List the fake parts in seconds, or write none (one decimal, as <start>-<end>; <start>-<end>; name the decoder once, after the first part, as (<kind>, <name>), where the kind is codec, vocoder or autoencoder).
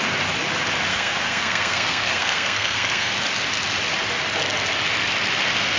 0.9-3.1 (codec, SNAC)